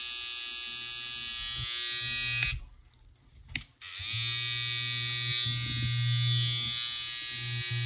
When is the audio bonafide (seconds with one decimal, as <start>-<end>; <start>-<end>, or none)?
0.0-7.9